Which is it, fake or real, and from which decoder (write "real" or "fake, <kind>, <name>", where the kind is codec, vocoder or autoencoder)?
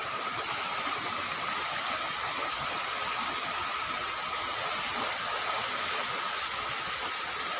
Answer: real